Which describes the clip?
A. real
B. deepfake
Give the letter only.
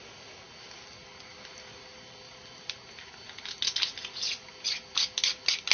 A